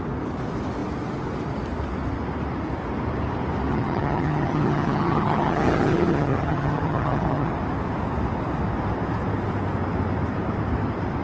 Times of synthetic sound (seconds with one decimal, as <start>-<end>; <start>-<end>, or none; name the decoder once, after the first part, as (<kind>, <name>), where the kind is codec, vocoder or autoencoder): 3.7-7.5 (vocoder, HiFi-GAN)